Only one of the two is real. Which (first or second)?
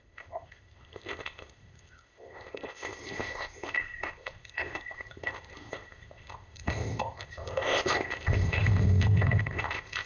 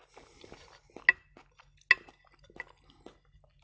second